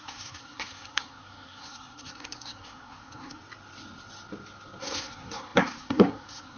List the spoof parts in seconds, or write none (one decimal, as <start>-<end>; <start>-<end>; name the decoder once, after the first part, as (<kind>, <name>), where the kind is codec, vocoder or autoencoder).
0.0-3.4 (codec, SNAC); 4.8-6.6